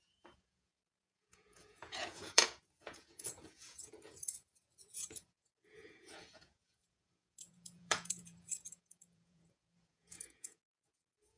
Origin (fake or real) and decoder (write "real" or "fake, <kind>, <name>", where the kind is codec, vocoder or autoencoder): fake, vocoder, Vocos